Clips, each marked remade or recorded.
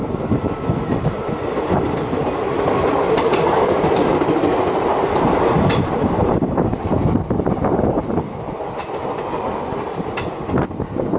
recorded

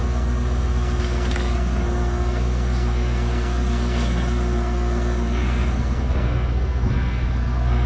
remade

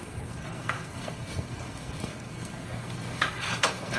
remade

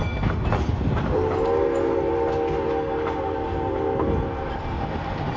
recorded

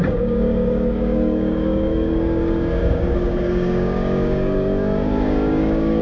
remade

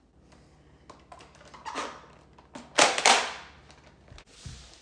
recorded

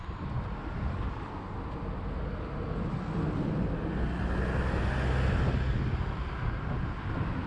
recorded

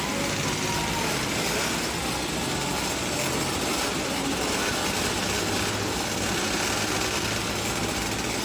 recorded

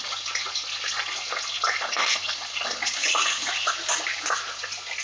recorded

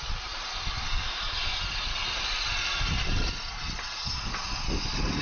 recorded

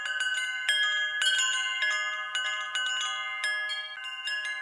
recorded